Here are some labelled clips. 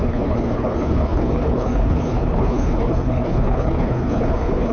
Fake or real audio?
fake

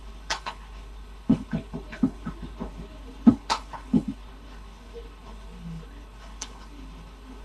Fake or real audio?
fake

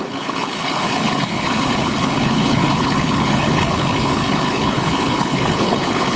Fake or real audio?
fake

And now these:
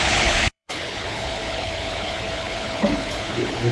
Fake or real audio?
fake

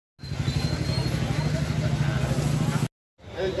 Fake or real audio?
real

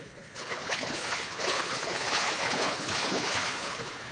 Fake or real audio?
fake